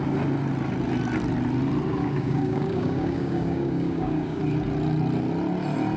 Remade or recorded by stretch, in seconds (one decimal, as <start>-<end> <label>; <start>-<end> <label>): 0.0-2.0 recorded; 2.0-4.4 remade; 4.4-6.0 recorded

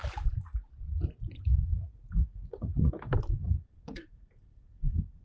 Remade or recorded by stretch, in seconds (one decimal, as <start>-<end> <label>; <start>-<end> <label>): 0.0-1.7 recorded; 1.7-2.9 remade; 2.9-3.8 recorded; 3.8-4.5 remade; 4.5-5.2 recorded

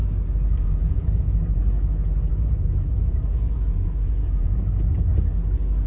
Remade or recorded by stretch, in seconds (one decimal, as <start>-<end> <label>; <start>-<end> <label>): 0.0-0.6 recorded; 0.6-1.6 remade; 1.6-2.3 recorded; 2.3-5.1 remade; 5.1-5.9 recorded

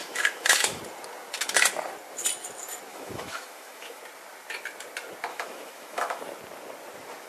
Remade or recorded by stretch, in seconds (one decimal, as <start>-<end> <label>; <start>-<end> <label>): 0.0-0.8 remade; 0.8-2.9 recorded; 2.9-4.0 remade; 4.0-5.3 recorded; 5.3-6.2 remade; 6.2-7.3 recorded

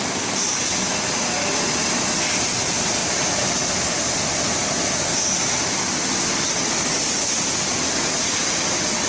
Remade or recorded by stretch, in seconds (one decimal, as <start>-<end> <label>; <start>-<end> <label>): 0.0-9.1 recorded

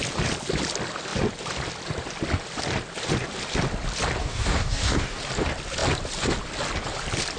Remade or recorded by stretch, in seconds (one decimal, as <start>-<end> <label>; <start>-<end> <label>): 0.0-4.2 recorded; 4.2-5.2 remade; 5.2-7.4 recorded